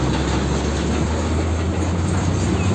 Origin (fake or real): real